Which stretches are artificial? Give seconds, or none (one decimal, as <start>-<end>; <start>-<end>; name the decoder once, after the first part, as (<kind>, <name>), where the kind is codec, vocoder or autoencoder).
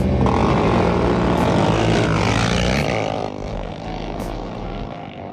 3.5-5.3 (codec, SNAC)